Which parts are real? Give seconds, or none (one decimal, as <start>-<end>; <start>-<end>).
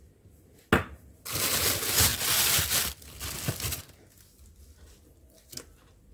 0.0-6.1